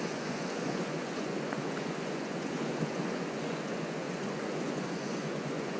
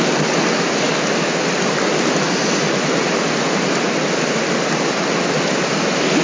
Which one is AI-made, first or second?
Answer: first